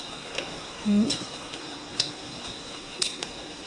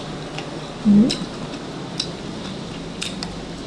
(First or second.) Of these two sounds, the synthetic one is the first